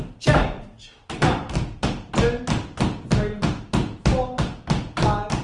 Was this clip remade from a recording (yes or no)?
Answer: no